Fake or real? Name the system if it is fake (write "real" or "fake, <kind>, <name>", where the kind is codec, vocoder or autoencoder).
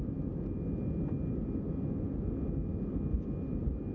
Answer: real